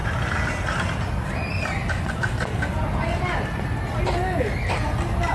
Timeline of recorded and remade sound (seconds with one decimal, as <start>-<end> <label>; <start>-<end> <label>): 0.0-5.3 recorded